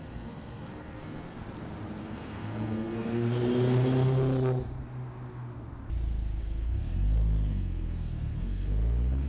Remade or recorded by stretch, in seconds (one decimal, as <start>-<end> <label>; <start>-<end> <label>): 0.0-1.4 remade; 1.4-2.0 recorded; 2.0-3.4 remade; 3.4-6.4 recorded; 6.4-9.3 remade

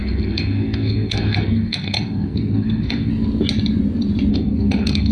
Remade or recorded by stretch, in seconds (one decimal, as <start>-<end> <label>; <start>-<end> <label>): 0.0-3.1 remade; 3.1-4.3 recorded; 4.3-5.1 remade